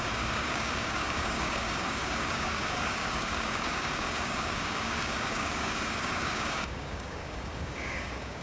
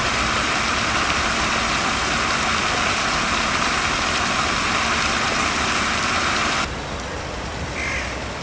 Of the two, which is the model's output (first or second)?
first